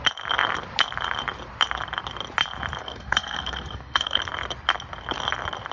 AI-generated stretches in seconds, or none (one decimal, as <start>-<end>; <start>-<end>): 2.8-4.2